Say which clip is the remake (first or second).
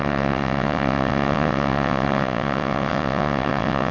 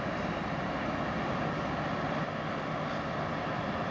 first